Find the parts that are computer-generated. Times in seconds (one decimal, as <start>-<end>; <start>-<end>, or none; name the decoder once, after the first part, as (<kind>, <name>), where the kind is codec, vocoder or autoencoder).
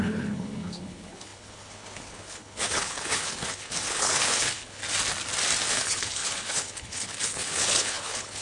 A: 0.0-4.8 (codec, HILCodec); 5.7-8.4